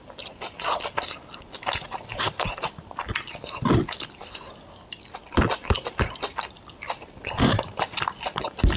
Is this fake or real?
real